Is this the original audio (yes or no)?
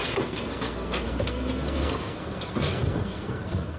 no